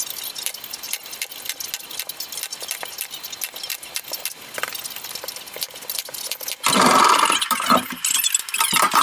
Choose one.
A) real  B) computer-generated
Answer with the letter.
A